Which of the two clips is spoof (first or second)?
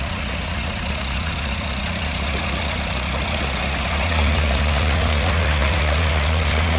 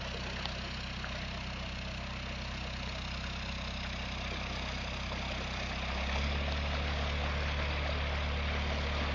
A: first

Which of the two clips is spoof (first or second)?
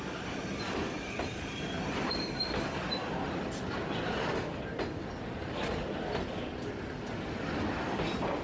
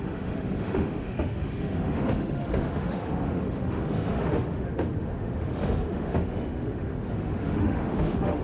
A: second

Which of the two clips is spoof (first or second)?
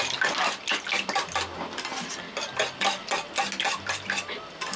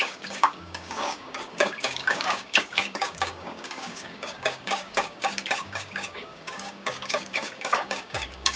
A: second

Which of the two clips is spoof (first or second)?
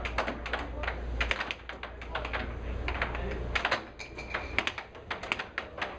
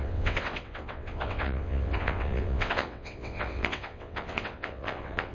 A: second